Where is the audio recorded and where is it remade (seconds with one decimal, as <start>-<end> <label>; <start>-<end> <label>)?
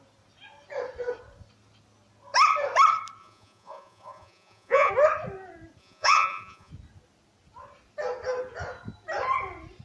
0.0-3.2 recorded; 3.2-4.9 remade; 4.9-5.8 recorded; 5.8-6.7 remade; 6.7-9.8 recorded